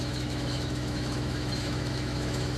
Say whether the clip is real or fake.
fake